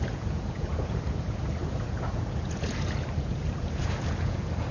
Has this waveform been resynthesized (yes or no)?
yes